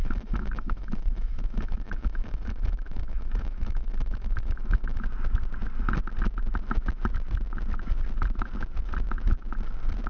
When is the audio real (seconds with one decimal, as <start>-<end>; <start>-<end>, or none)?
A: 5.0-10.1